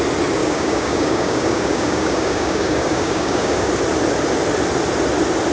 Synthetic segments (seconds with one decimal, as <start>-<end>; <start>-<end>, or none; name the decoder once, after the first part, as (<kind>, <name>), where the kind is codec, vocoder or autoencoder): 0.4-3.7 (codec, DAC)